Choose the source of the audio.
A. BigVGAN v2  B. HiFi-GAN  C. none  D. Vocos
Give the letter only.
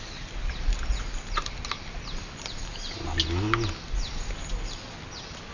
C